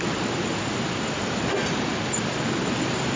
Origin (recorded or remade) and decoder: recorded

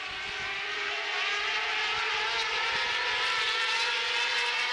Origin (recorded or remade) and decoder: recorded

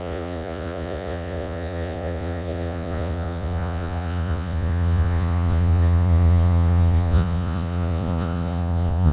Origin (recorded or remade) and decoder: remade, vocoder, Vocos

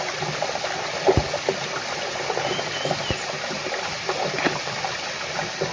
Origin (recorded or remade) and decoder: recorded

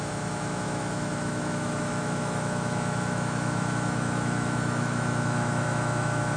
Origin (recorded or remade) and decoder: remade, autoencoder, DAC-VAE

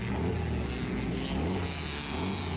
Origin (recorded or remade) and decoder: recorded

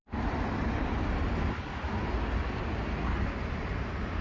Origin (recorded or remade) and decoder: recorded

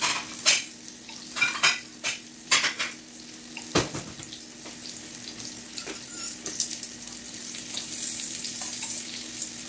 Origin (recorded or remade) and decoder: recorded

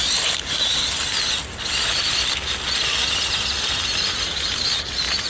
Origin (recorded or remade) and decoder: recorded